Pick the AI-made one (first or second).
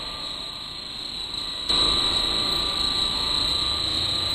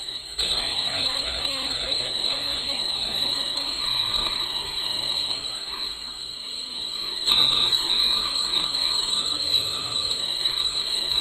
second